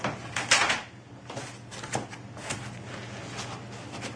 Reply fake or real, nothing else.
real